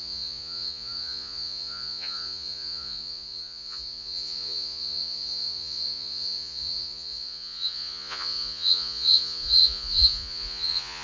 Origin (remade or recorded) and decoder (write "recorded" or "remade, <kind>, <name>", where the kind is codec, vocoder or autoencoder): remade, vocoder, Vocos